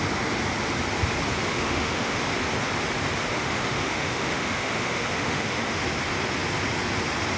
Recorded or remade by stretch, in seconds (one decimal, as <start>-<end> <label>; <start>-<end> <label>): 0.0-1.5 recorded; 1.5-2.2 remade; 2.2-3.3 recorded; 3.3-5.8 remade; 5.8-7.4 recorded

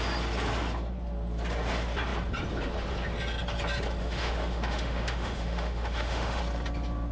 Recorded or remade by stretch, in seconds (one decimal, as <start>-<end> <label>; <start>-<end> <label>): 0.0-4.0 recorded; 4.0-6.4 remade; 6.4-7.1 recorded

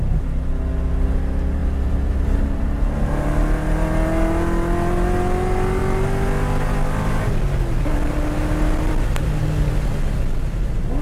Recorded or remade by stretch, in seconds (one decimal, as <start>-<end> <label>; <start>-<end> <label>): 0.0-11.0 recorded

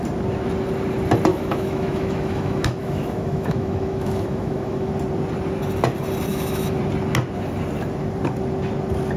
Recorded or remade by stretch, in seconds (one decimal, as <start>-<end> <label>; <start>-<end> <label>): 0.0-1.3 recorded; 1.3-4.9 remade; 4.9-6.3 recorded; 6.3-6.8 remade; 6.8-9.2 recorded

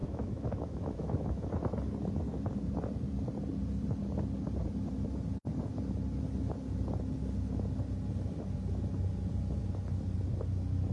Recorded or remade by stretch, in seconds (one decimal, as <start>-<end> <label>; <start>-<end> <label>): 0.0-1.6 remade; 1.6-10.9 recorded